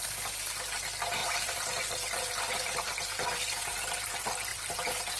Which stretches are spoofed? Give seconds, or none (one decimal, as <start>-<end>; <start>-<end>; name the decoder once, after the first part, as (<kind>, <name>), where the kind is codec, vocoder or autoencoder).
1.2-3.9 (vocoder, BigVGAN v2)